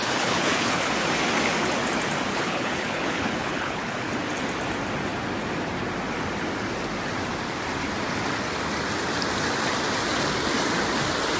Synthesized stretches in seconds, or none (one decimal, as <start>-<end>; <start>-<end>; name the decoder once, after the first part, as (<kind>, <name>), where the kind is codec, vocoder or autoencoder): 0.0-0.9 (codec, HILCodec); 2.3-4.1